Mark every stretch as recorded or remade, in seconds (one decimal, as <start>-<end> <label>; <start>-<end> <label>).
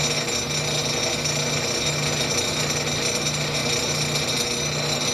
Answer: 0.0-5.1 recorded